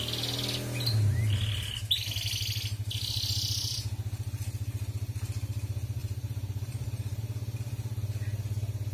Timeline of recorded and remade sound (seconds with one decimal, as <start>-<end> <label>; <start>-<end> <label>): 0.0-6.0 recorded; 6.0-7.2 remade; 7.2-8.9 recorded